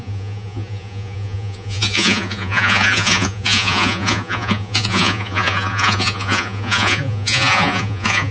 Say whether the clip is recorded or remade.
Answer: remade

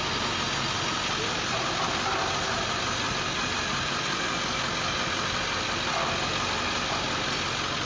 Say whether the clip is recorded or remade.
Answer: recorded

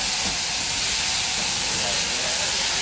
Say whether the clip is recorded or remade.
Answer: recorded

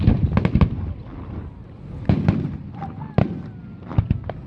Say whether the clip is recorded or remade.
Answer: recorded